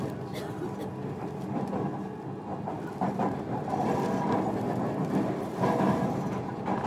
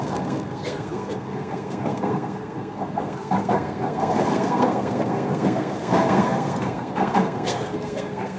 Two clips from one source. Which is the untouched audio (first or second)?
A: first